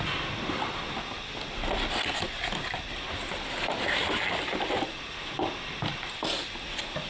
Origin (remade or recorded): recorded